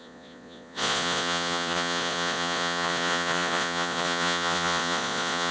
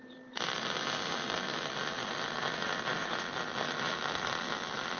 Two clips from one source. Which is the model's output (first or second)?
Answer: first